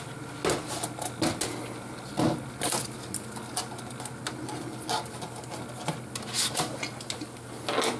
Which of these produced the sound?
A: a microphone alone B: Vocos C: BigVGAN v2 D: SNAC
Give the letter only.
A